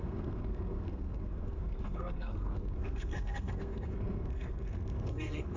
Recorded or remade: remade